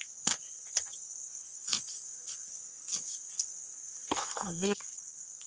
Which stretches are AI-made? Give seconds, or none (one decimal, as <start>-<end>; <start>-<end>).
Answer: 0.0-5.5